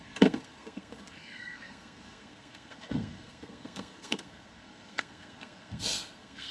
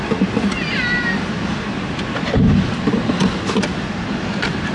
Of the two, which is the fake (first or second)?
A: first